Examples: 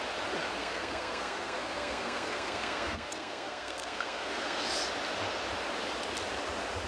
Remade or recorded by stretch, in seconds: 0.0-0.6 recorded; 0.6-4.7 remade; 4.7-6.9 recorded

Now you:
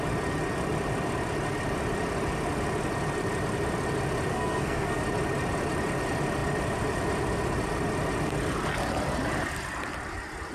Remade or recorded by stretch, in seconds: 0.0-4.3 recorded; 4.3-5.0 remade; 5.0-10.5 recorded

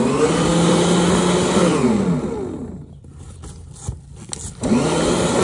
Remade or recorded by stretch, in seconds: 0.0-5.4 recorded

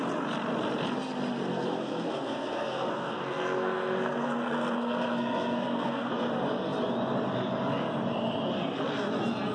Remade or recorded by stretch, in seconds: 0.0-1.5 recorded; 1.5-6.1 remade; 6.1-9.5 recorded